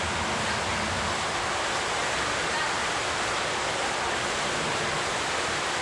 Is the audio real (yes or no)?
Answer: yes